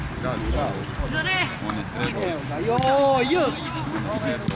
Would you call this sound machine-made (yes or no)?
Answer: no